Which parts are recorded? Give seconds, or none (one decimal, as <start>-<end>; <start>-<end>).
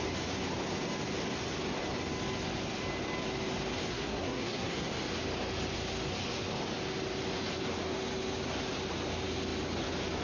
0.0-3.9; 4.9-10.2